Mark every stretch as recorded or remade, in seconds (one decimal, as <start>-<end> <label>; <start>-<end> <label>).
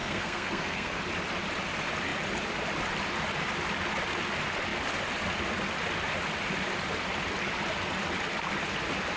0.0-1.0 remade; 1.0-9.2 recorded